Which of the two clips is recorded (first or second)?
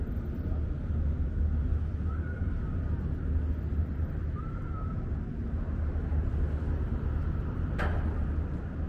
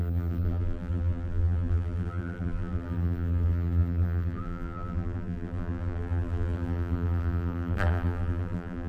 first